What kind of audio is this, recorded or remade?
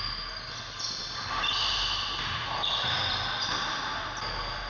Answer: recorded